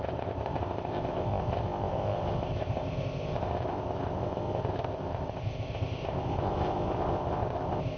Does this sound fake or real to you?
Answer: fake